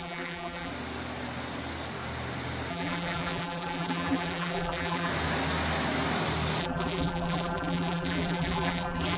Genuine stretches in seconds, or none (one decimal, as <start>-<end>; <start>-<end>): 0.7-2.7; 5.1-6.6